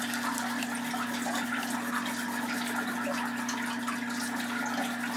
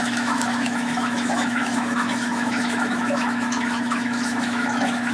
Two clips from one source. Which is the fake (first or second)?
second